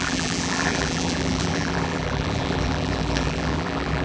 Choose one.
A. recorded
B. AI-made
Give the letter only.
B